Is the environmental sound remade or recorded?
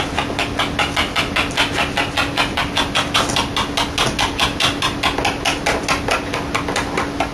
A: recorded